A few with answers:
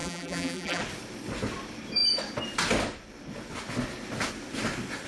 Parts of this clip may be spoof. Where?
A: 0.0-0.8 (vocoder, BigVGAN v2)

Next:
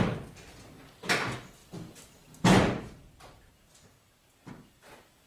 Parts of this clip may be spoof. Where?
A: 1.6-3.5 (vocoder, BigVGAN v2)

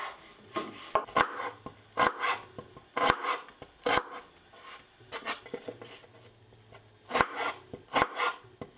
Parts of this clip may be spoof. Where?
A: none

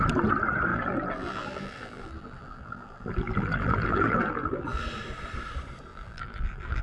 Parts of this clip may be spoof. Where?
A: 0.7-4.8 (vocoder, BigVGAN v2); 5.9-6.8

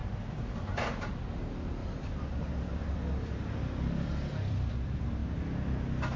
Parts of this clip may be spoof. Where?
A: 0.0-1.4 (vocoder, BigVGAN v2); 1.8-4.7